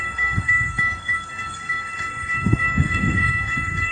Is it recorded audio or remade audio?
remade